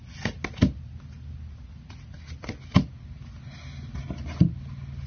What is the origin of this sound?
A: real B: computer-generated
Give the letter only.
A